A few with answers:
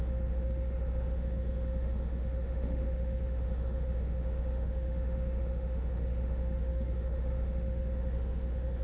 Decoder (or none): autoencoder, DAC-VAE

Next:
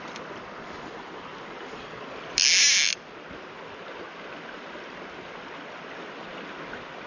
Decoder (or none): none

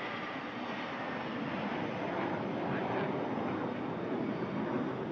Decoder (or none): none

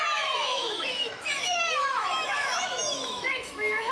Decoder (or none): autoencoder, DAC-VAE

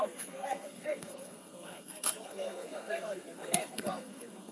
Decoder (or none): codec, SNAC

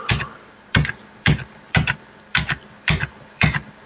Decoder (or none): vocoder, BigVGAN v2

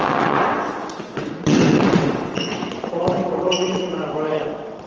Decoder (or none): vocoder, WaveNeXt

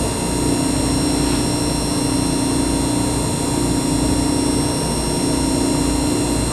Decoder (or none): none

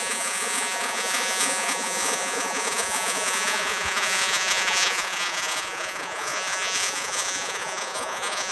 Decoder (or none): vocoder, Vocos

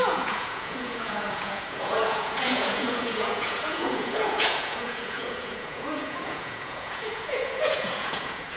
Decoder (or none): vocoder, Vocos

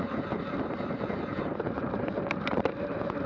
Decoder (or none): vocoder, BigVGAN v2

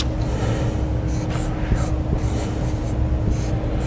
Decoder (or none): none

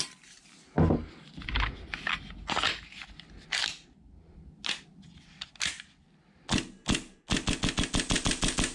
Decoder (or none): none